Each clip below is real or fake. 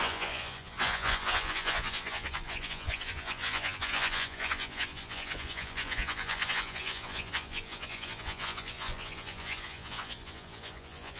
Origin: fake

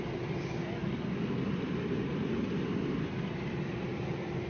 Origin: real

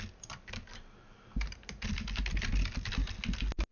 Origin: real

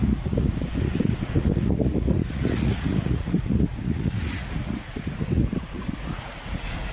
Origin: fake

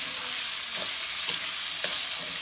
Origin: real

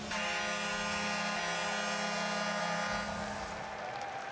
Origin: real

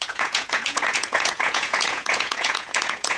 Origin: fake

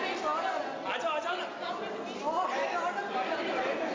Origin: real